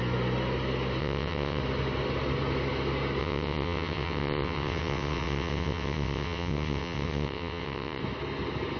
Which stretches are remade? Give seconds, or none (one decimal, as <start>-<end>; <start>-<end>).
1.0-1.6; 3.2-8.0